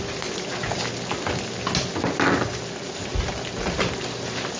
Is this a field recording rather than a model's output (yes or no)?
yes